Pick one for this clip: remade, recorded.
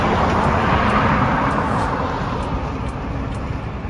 recorded